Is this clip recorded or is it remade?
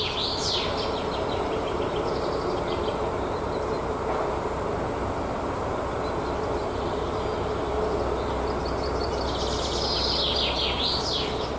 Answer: recorded